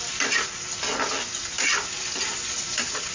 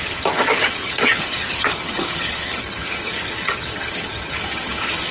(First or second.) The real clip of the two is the first